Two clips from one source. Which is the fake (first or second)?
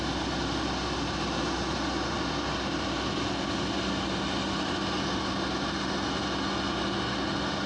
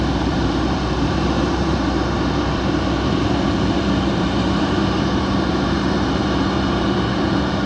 second